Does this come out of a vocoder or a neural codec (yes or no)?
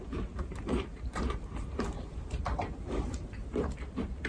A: yes